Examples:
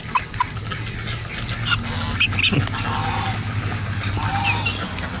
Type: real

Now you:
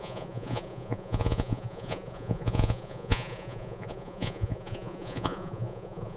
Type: fake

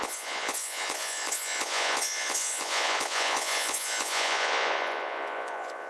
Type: fake